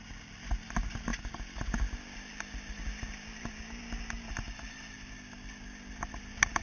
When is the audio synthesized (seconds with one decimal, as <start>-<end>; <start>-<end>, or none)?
none